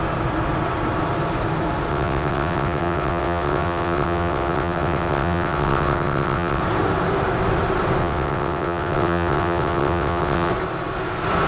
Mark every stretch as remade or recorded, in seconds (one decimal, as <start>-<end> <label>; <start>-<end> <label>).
0.0-1.9 recorded; 1.9-6.6 remade; 6.6-8.0 recorded; 8.0-10.5 remade; 10.5-11.5 recorded